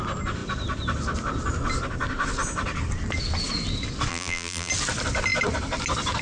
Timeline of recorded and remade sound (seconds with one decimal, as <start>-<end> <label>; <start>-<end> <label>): 0.0-4.1 recorded; 4.1-4.7 remade; 4.7-6.2 recorded